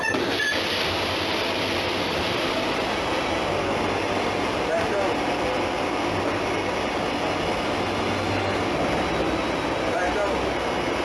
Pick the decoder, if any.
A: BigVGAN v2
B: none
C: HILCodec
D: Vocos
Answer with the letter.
B